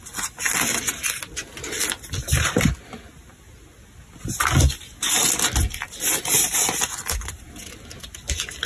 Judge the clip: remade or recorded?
recorded